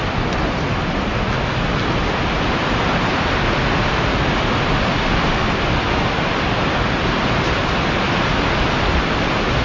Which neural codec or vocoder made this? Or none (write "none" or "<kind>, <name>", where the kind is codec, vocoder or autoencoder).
none